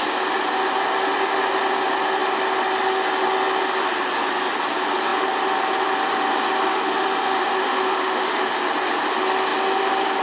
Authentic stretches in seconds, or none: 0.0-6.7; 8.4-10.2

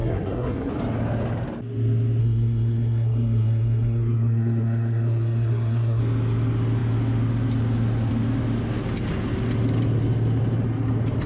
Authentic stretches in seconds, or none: 0.7-2.2; 6.0-11.3

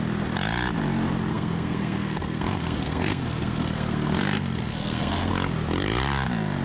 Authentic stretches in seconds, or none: 0.0-1.3; 5.3-6.6

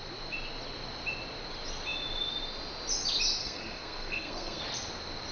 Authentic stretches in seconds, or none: 0.0-3.4; 4.6-5.3